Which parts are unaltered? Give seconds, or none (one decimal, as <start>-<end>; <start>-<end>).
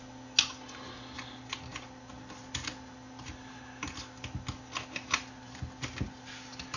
0.0-6.8